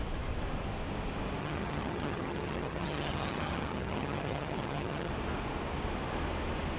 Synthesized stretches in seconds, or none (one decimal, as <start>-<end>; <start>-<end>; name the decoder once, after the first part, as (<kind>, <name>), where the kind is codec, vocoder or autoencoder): 1.4-5.1 (vocoder, HiFi-GAN)